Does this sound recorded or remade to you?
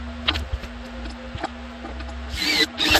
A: recorded